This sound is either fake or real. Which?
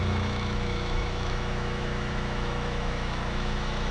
fake